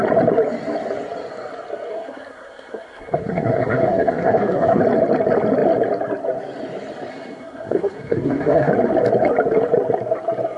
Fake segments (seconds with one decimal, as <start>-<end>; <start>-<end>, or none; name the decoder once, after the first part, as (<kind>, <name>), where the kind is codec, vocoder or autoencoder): 1.9-4.8 (codec, SNAC); 7.1-8.7